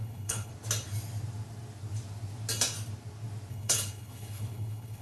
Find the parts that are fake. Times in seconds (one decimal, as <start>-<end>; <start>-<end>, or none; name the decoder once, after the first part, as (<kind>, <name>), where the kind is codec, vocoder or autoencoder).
0.0-0.5 (codec, HILCodec); 3.5-5.0